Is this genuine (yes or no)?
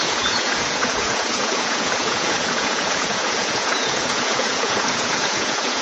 no